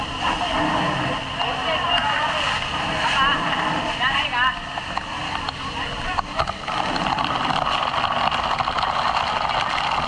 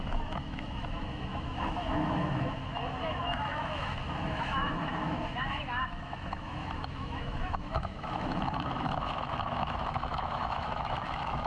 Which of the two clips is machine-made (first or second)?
second